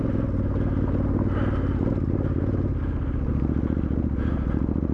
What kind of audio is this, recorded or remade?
recorded